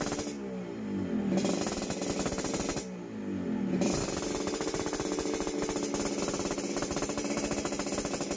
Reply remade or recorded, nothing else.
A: recorded